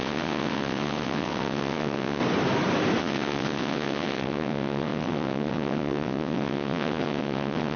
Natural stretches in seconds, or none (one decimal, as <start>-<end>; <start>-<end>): 2.2-3.0